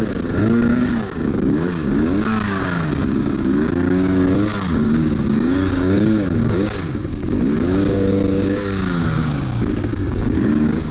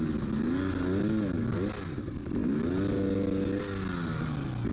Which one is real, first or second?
second